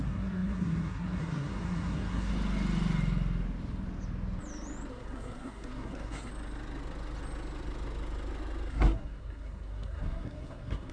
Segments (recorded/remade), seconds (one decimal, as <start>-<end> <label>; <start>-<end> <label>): 0.0-2.3 remade; 2.3-4.9 recorded; 4.9-6.3 remade; 6.3-8.7 recorded; 8.7-10.9 remade